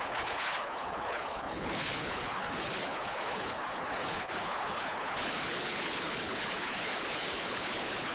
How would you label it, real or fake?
fake